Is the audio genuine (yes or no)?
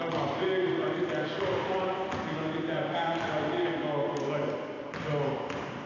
yes